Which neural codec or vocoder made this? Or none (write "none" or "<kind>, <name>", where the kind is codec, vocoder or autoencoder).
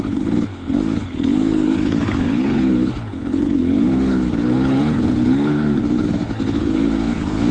codec, HILCodec